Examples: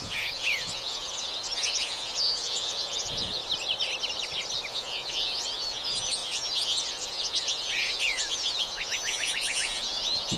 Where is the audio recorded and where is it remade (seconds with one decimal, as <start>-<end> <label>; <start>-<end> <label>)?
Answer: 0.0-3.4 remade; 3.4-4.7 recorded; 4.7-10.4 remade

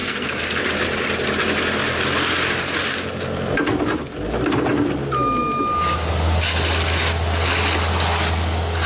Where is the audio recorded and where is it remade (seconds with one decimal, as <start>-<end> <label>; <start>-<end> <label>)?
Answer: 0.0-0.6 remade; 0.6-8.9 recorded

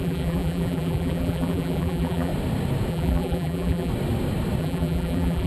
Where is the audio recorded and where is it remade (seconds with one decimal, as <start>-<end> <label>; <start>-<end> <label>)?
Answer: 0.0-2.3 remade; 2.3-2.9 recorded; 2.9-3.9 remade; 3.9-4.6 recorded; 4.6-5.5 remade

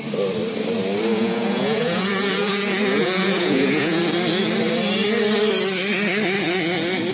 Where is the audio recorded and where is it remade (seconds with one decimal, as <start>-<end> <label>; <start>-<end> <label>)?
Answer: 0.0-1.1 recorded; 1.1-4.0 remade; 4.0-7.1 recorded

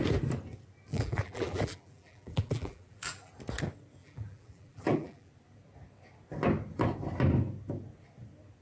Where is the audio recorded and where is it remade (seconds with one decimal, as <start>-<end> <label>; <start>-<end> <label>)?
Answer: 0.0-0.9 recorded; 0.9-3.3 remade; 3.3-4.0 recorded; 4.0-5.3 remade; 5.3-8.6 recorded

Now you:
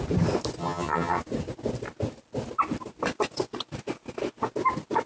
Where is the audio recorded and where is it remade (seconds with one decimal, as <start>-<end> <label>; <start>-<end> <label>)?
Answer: 0.0-0.6 recorded; 0.6-1.2 remade; 1.2-5.1 recorded